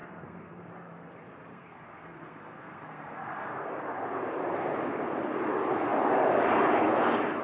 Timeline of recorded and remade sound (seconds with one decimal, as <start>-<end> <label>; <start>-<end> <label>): 0.0-0.7 remade; 0.7-1.5 recorded; 1.5-3.7 remade; 3.7-7.4 recorded